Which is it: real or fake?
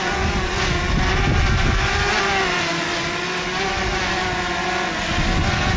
real